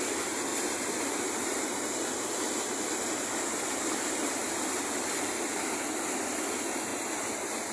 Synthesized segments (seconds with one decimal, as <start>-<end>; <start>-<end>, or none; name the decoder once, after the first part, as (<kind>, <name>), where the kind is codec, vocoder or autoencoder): 0.5-2.1 (vocoder, BigVGAN v2)